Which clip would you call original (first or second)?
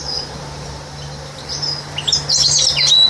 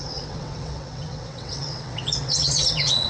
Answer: first